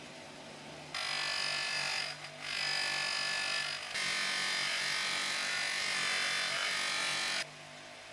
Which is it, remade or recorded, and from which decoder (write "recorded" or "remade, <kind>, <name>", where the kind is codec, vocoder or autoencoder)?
recorded